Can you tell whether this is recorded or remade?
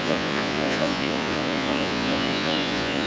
remade